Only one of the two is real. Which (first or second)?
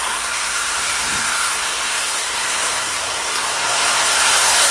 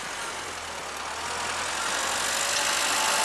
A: second